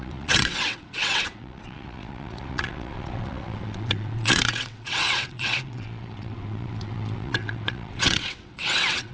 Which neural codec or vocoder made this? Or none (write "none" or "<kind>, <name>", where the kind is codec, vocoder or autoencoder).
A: vocoder, WaveNeXt